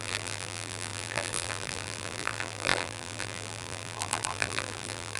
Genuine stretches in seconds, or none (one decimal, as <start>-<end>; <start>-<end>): none